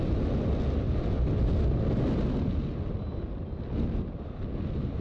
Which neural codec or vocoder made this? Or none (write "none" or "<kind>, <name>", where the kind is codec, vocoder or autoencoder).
none